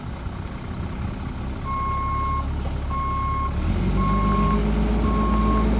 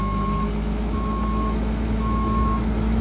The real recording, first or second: first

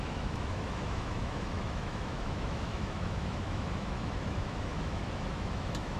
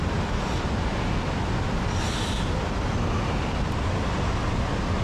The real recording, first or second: second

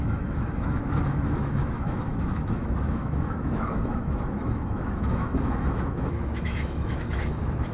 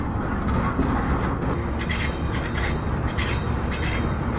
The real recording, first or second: second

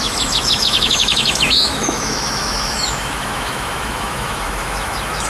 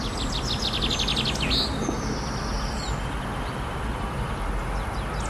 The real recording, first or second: second